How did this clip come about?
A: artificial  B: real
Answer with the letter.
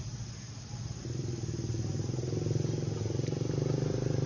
B